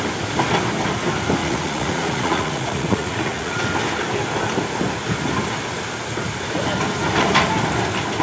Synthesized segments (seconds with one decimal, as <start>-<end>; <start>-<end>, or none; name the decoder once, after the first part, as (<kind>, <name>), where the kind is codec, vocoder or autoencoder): 1.4-3.6 (vocoder, Vocos)

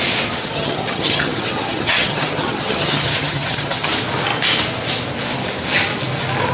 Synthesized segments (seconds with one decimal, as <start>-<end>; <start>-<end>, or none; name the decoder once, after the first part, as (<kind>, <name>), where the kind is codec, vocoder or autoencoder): 0.4-3.9 (vocoder, HiFi-GAN)

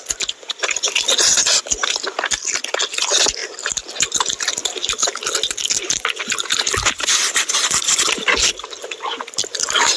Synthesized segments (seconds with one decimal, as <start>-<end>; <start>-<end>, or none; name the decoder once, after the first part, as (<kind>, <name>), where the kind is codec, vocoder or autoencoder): none

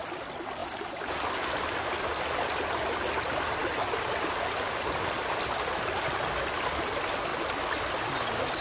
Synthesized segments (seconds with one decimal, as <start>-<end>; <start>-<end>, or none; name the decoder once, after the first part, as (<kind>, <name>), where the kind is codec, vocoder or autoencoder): none